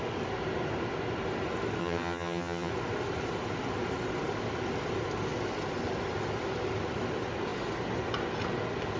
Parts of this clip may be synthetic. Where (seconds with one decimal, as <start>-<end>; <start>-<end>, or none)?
1.8-2.7